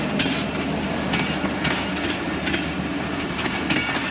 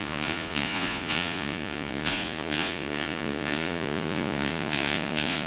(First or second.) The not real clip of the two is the second